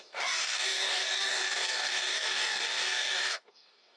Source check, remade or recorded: remade